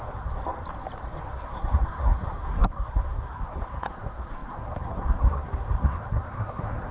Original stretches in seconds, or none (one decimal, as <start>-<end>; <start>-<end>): 0.4-1.1